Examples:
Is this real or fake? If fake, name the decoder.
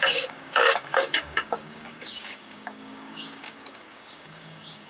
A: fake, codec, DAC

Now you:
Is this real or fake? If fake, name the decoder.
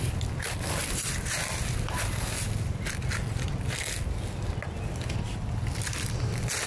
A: real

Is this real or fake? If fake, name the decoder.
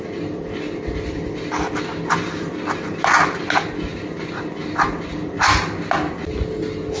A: real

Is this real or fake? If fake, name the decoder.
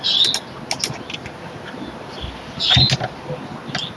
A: real